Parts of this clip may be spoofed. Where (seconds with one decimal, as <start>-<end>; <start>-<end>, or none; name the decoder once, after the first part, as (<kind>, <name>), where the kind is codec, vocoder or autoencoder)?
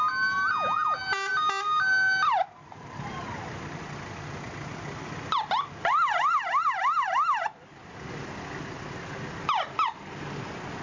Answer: none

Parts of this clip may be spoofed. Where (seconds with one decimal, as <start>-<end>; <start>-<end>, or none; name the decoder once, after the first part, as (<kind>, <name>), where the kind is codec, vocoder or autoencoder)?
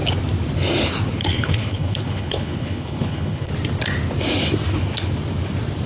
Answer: 1.2-3.5 (codec, HILCodec)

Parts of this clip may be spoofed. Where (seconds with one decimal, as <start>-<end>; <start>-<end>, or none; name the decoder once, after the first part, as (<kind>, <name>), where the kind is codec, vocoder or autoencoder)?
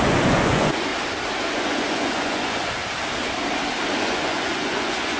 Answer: 0.0-0.9 (vocoder, Vocos); 1.5-2.8; 4.0-5.2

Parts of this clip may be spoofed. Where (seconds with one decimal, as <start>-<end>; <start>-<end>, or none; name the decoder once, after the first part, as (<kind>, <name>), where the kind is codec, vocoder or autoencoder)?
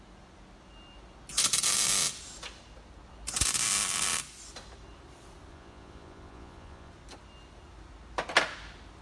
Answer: 5.5-6.9 (vocoder, Vocos)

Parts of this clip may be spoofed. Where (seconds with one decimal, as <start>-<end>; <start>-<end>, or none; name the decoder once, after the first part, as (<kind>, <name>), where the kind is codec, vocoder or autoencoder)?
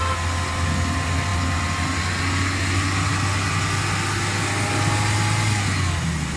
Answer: none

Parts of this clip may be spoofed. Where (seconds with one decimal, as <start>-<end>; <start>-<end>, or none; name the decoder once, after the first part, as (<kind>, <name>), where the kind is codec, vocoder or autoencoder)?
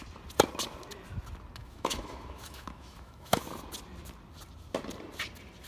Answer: 1.6-3.4 (autoencoder, DAC-VAE)